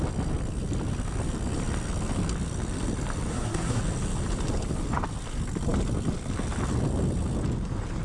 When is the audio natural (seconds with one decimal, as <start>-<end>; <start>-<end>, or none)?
0.0-3.3; 3.8-8.0